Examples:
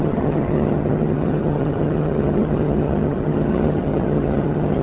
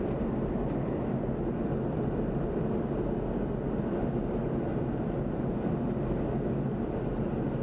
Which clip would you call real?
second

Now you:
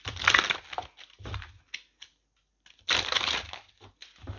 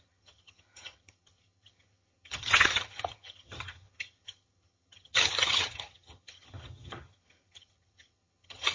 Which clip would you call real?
first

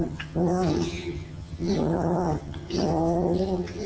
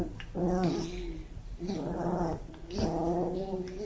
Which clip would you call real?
second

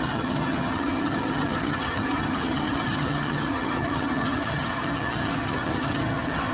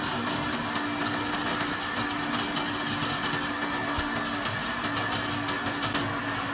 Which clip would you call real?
second